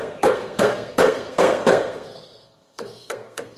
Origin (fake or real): fake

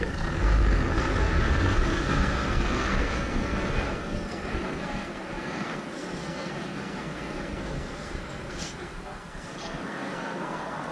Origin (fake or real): fake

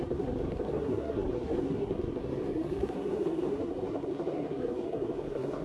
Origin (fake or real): fake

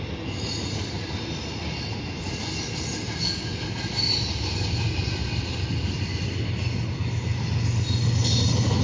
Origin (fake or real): real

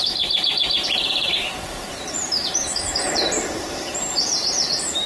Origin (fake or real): fake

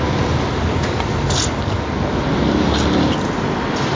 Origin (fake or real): real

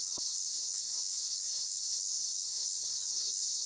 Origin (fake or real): fake